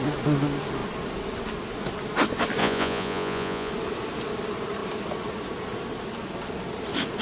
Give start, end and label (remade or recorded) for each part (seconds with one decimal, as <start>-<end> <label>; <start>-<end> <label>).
0.0-2.6 recorded; 2.6-3.7 remade; 3.7-7.2 recorded